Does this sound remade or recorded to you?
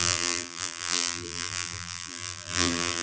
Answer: remade